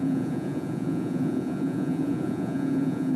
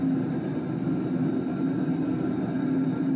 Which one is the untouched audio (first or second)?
second